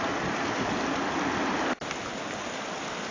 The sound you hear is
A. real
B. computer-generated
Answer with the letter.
A